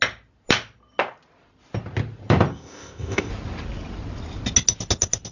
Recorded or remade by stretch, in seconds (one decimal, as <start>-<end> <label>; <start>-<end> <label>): 0.0-2.5 recorded; 2.5-3.3 remade; 3.3-5.3 recorded